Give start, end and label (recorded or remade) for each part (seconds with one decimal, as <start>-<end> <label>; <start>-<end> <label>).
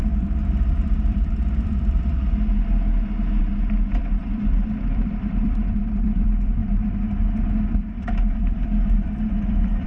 0.0-2.1 remade; 2.1-3.4 recorded; 3.4-6.6 remade; 6.6-8.3 recorded; 8.3-9.9 remade